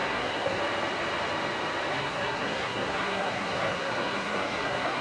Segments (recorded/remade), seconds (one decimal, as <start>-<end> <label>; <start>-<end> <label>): 0.0-0.6 remade; 0.6-1.9 recorded; 1.9-5.0 remade

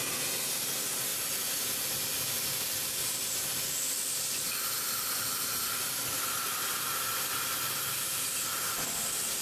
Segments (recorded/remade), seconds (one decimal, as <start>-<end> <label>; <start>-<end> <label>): 0.0-9.4 recorded

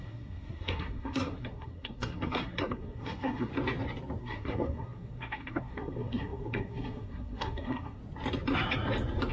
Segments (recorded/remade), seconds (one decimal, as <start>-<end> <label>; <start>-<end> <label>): 0.0-3.5 remade; 3.5-4.2 recorded; 4.2-8.0 remade; 8.0-9.3 recorded

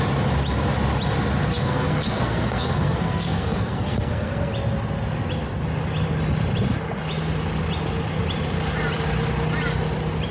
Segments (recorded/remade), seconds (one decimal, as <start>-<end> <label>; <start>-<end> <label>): 0.0-1.5 recorded; 1.5-4.5 remade; 4.5-10.3 recorded

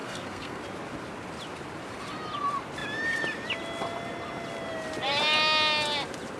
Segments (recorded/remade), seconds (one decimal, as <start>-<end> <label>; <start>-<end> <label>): 0.0-0.6 remade; 0.6-6.4 recorded

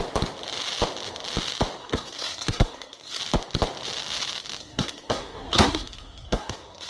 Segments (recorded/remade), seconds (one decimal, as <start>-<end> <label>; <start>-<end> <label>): 0.0-1.8 recorded; 1.8-3.2 remade; 3.2-4.6 recorded; 4.6-6.9 remade